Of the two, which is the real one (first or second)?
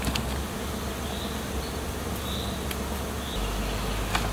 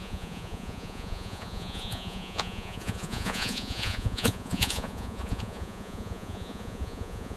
first